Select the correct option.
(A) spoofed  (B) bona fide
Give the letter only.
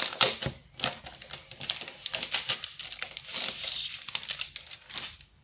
B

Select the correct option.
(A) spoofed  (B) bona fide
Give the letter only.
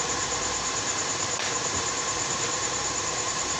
A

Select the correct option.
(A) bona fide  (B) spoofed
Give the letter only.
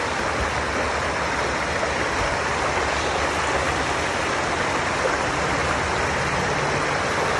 A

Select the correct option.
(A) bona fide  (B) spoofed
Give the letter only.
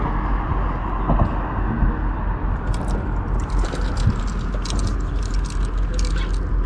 A